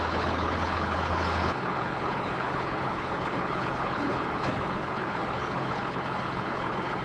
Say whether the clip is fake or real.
fake